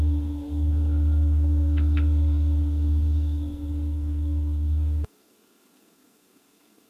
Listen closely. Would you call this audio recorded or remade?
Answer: remade